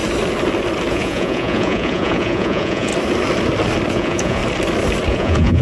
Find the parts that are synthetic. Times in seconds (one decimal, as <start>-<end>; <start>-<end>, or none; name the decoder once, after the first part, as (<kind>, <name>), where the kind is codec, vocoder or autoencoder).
0.9-2.9 (vocoder, Vocos); 3.9-4.4; 5.1-5.6